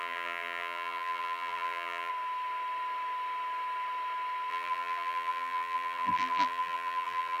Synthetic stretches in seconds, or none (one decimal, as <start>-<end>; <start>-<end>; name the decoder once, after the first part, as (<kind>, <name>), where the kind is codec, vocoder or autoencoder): 0.0-2.1 (vocoder, BigVGAN v2); 4.5-7.4

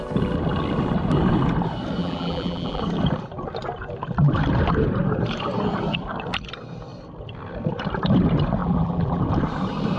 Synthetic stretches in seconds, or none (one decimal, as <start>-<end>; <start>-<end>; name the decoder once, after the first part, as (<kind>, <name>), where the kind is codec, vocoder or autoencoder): 2.0-2.8 (vocoder, BigVGAN v2); 8.6-9.2

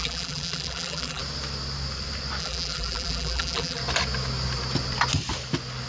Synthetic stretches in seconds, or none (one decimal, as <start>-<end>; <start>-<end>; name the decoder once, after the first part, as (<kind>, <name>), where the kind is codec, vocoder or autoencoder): 0.0-1.2 (vocoder, BigVGAN v2); 2.4-3.8